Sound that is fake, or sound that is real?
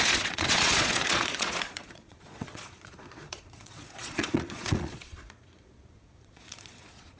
fake